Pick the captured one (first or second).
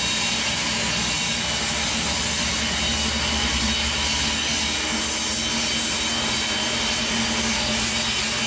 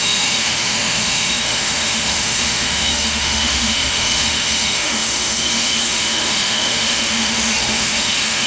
first